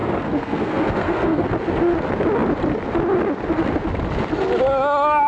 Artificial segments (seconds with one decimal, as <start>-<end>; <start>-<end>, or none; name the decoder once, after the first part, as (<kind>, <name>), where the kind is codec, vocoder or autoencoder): 0.0-1.5 (codec, SNAC)